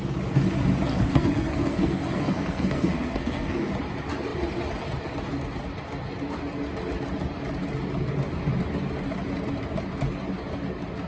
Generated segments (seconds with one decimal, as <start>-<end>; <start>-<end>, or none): 0.9-3.7